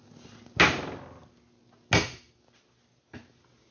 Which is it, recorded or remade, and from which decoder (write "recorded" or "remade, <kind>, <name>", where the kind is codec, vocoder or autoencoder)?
recorded